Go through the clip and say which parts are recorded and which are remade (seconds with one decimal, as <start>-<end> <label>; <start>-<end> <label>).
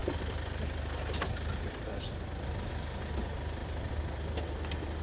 0.0-3.0 remade; 3.0-3.6 recorded; 3.6-4.3 remade; 4.3-5.0 recorded